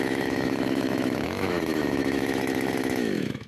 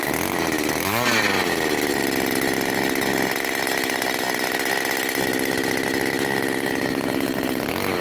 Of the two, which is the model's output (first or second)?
first